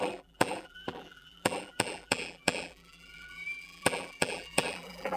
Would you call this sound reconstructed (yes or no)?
yes